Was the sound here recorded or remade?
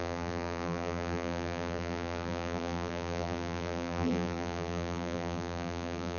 remade